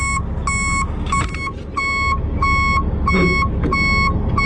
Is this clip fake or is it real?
real